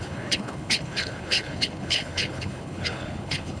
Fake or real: fake